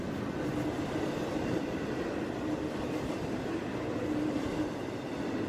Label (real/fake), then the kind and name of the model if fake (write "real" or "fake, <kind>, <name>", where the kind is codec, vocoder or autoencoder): real